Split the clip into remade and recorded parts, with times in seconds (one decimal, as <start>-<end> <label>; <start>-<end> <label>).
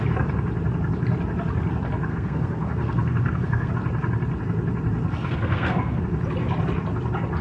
0.0-2.1 recorded; 2.1-3.7 remade; 3.7-5.2 recorded; 5.2-6.0 remade; 6.0-7.4 recorded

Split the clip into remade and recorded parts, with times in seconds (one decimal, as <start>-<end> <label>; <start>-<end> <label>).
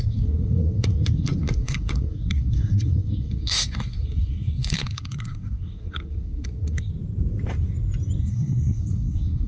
0.0-6.9 remade; 6.9-8.2 recorded; 8.2-9.5 remade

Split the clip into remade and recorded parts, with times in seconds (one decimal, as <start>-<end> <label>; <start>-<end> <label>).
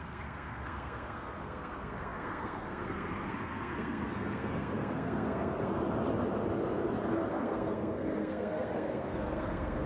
0.0-5.8 remade; 5.8-7.3 recorded; 7.3-9.9 remade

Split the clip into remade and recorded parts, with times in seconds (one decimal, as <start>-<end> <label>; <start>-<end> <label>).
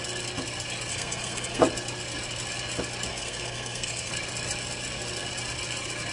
0.0-0.9 recorded; 0.9-1.6 remade; 1.6-3.1 recorded; 3.1-4.1 remade; 4.1-6.1 recorded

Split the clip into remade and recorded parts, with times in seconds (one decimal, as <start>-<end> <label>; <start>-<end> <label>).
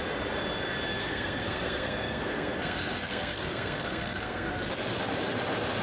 0.0-1.0 recorded; 1.0-4.5 remade; 4.5-5.8 recorded